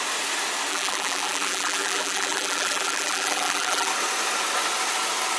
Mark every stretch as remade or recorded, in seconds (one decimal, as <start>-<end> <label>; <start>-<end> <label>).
0.0-0.7 recorded; 0.7-3.9 remade; 3.9-5.4 recorded